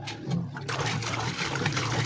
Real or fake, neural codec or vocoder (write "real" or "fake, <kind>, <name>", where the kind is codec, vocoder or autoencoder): real